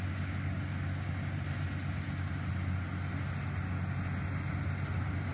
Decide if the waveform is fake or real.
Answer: real